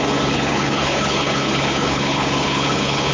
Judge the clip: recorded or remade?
remade